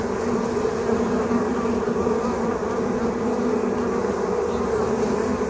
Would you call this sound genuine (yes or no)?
yes